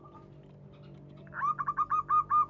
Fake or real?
real